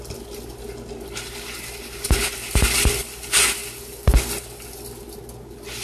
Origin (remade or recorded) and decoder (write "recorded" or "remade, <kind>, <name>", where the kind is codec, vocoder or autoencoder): recorded